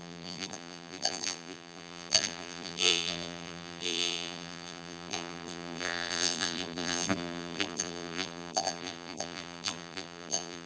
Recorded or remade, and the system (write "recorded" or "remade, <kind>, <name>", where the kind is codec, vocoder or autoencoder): remade, vocoder, BigVGAN v2